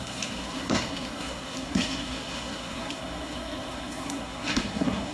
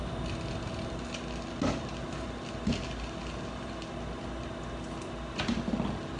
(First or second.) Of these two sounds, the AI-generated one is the first